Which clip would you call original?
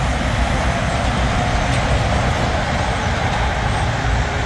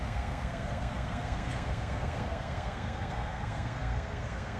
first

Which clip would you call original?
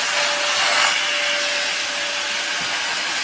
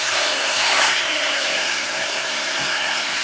first